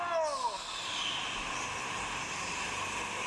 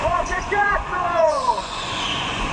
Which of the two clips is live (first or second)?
first